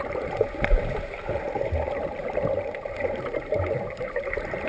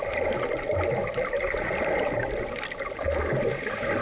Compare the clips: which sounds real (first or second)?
second